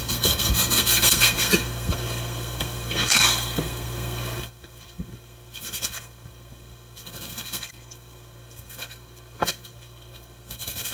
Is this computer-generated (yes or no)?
yes